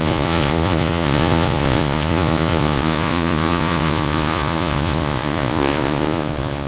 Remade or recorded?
remade